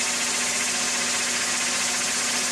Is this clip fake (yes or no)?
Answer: no